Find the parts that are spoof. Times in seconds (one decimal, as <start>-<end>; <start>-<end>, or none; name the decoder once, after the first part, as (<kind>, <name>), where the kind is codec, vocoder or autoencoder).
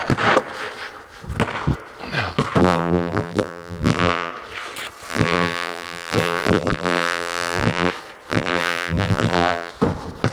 2.6-4.3 (vocoder, BigVGAN v2); 5.1-7.9; 8.3-9.7